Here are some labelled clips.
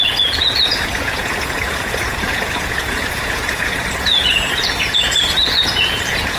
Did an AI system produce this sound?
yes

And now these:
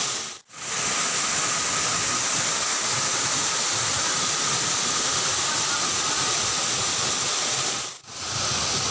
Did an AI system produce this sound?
no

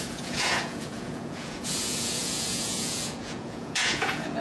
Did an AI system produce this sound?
yes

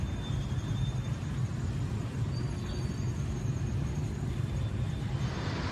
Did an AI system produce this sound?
no